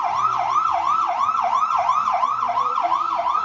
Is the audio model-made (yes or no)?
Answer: yes